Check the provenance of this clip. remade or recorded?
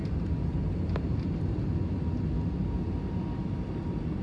recorded